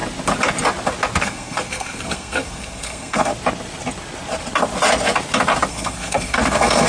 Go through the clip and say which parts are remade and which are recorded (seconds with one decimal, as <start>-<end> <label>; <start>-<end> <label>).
0.0-1.2 recorded; 1.2-3.3 remade; 3.3-5.7 recorded; 5.7-6.9 remade